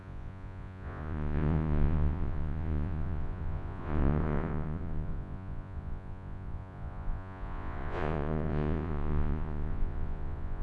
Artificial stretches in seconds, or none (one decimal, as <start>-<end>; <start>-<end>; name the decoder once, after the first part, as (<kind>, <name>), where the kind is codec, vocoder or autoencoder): 0.0-10.6 (vocoder, Vocos)

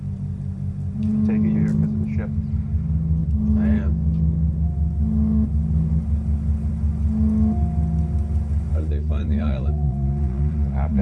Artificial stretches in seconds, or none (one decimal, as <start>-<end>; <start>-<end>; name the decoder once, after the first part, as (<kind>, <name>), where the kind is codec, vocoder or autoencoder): 8.7-11.0 (vocoder, Vocos)

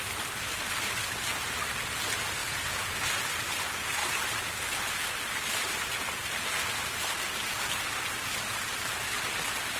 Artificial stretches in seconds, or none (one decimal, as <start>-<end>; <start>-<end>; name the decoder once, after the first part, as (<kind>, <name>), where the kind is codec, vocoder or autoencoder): 2.4-3.2 (vocoder, Vocos)

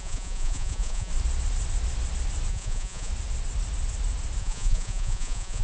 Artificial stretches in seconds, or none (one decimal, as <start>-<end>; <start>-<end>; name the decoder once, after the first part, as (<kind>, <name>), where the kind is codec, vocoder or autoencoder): 0.0-1.1 (vocoder, Vocos); 2.5-3.1; 4.4-5.6

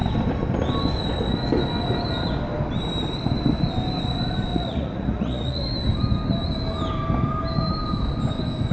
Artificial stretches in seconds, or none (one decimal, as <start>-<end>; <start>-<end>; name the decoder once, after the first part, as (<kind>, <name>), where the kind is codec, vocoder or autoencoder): 4.5-5.6 (vocoder, Vocos)

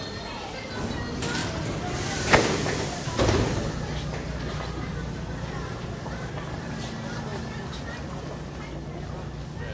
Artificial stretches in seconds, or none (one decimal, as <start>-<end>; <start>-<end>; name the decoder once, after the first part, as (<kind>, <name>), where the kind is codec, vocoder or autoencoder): none

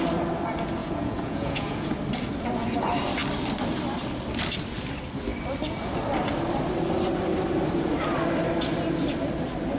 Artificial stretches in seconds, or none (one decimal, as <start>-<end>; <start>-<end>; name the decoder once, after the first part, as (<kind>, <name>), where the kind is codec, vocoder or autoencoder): 0.8-1.9 (vocoder, Vocos)